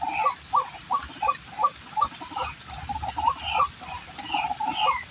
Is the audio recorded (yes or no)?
yes